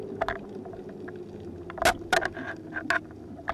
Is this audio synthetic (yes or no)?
no